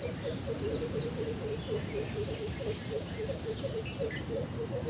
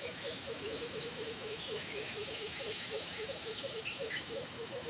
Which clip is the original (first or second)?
first